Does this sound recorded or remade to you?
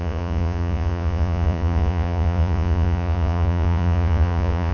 remade